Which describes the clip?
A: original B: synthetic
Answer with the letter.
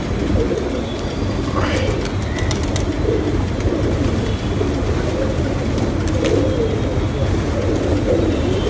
A